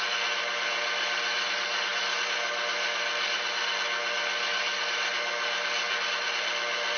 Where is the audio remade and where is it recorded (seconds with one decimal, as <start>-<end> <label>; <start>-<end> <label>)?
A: 0.0-7.0 recorded